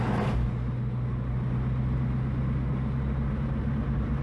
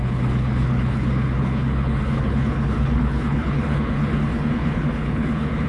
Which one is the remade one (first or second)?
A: second